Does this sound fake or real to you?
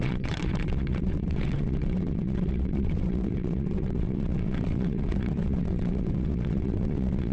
fake